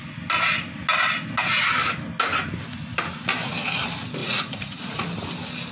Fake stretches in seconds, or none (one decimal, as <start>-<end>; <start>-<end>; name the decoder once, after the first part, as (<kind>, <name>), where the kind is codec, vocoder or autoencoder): 4.2-5.0 (vocoder, Vocos)